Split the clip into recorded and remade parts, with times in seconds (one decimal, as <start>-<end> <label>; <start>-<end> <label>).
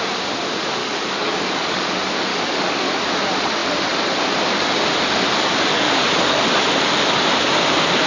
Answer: 0.0-0.8 recorded; 0.8-1.9 remade; 1.9-2.3 recorded; 2.3-2.9 remade; 2.9-5.7 recorded; 5.7-6.4 remade; 6.4-8.1 recorded